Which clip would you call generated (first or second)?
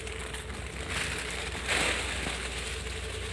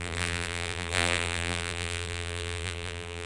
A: second